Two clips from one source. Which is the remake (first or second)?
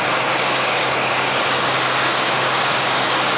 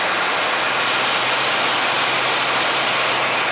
first